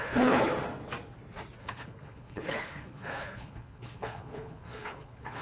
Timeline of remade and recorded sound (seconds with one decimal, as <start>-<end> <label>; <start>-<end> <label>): 0.0-0.5 remade; 0.5-1.6 recorded; 1.6-5.4 remade